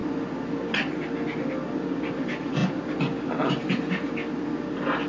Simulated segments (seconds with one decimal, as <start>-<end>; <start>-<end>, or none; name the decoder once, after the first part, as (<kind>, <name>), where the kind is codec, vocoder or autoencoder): none